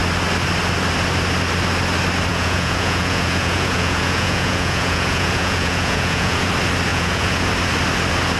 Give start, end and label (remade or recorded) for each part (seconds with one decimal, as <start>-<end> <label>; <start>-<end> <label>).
0.0-2.3 recorded; 2.3-6.5 remade; 6.5-6.9 recorded; 6.9-7.5 remade; 7.5-8.4 recorded